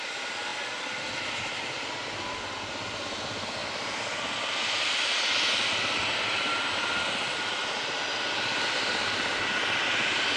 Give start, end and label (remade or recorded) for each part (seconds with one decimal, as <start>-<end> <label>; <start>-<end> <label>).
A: 0.0-10.4 recorded